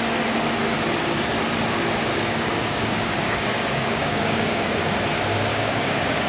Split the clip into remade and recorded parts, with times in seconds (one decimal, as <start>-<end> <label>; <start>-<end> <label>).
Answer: 0.0-2.1 recorded; 2.1-4.9 remade; 4.9-5.5 recorded; 5.5-6.3 remade